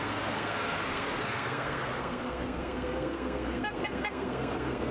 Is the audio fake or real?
fake